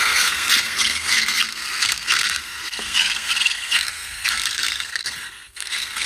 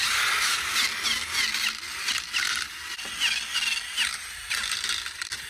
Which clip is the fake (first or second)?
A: first